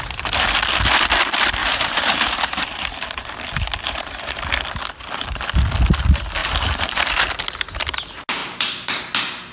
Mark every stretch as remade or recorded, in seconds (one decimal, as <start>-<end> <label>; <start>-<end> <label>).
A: 0.0-1.6 recorded; 1.6-4.4 remade; 4.4-6.4 recorded; 6.4-7.0 remade; 7.0-8.4 recorded; 8.4-9.0 remade; 9.0-9.5 recorded